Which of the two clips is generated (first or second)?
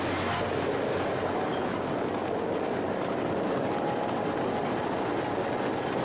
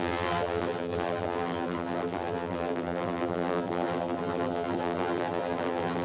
second